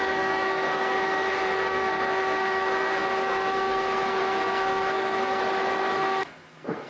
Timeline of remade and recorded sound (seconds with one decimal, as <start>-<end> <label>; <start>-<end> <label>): 0.0-5.4 remade; 5.4-5.9 recorded; 5.9-6.9 remade